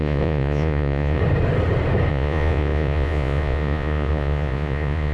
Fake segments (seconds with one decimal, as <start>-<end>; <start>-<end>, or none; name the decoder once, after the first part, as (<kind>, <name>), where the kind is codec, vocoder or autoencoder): 0.0-1.2 (vocoder, Vocos); 2.1-5.1